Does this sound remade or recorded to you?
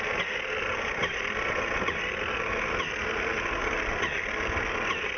recorded